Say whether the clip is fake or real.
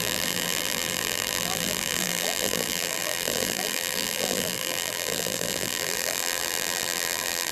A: fake